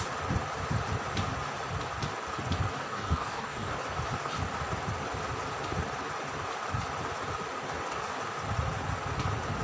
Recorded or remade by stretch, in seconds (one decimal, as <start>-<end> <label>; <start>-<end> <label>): 0.0-2.8 recorded; 2.8-3.7 remade; 3.7-9.6 recorded